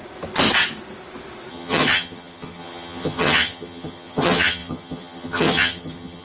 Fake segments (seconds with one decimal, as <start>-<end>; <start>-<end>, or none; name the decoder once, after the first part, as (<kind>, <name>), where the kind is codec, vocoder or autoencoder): 1.5-6.2 (vocoder, HiFi-GAN)

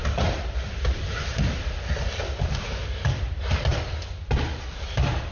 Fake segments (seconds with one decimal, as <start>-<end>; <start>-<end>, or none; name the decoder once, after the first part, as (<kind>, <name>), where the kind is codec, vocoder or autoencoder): 0.0-1.8 (vocoder, BigVGAN v2); 3.7-5.3

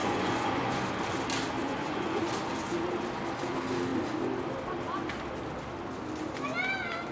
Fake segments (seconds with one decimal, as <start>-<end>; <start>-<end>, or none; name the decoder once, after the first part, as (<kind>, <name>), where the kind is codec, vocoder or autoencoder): 0.0-0.8 (vocoder, Vocos); 1.6-2.3

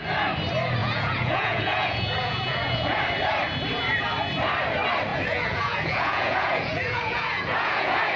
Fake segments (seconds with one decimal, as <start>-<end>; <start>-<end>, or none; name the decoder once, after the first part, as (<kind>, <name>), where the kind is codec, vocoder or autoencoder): 0.8-3.0 (vocoder, Vocos); 5.1-8.2

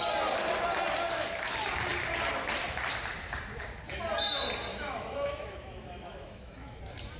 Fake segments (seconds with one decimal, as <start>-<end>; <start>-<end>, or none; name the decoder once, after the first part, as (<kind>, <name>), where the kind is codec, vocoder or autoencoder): 4.7-6.8 (autoencoder, DAC-VAE)